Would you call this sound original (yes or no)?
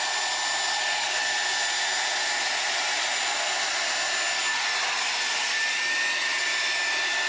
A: yes